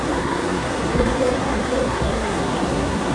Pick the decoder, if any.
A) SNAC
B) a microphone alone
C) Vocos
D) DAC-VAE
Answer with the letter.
A